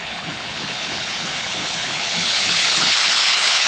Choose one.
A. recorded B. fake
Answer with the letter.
B